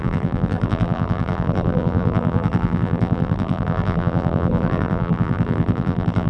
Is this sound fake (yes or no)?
yes